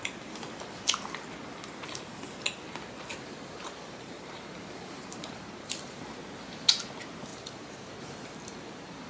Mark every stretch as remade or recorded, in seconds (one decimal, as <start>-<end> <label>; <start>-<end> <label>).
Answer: 0.0-3.1 recorded; 3.1-6.0 remade; 6.0-7.3 recorded; 7.3-9.1 remade